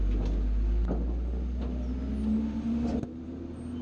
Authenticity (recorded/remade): recorded